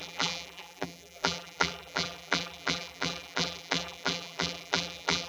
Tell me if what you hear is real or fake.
fake